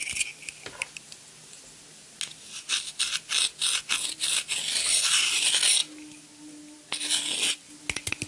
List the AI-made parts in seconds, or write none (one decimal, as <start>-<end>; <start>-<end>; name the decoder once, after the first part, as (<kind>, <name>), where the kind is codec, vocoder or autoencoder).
none